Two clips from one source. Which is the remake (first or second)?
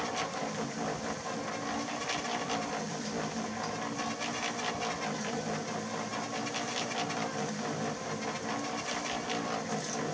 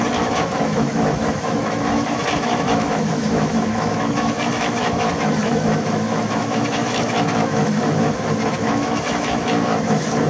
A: second